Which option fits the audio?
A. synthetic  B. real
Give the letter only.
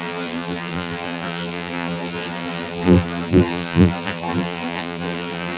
A